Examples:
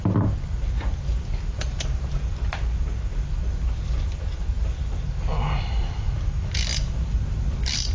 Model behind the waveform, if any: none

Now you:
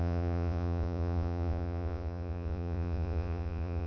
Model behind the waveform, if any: vocoder, Vocos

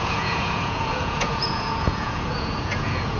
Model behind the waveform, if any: vocoder, Vocos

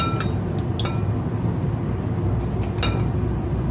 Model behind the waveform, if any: none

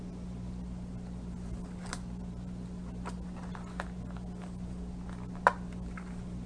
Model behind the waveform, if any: none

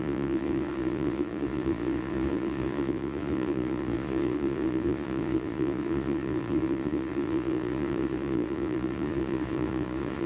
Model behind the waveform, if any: vocoder, Vocos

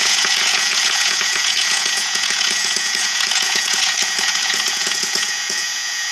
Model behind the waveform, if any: vocoder, Vocos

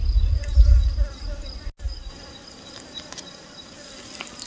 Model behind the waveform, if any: none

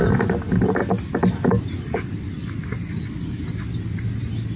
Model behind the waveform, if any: none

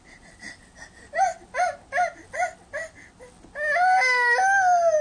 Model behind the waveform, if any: none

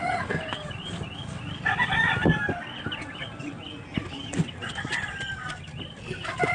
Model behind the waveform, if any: none